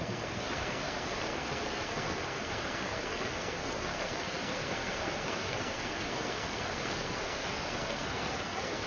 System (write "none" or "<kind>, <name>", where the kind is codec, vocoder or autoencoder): codec, SNAC